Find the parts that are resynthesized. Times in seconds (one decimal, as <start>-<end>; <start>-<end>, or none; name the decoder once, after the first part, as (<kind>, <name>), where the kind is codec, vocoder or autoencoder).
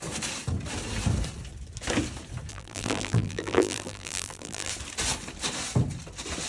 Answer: 2.5-4.7 (vocoder, BigVGAN v2)